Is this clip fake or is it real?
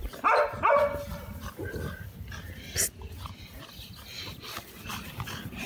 real